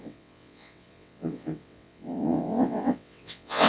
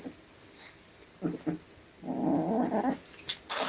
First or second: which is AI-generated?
first